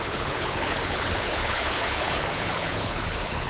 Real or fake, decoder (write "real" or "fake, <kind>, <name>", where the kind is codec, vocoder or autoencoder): fake, codec, HILCodec